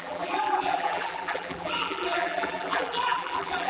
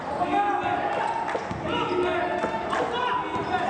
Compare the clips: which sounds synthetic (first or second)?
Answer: first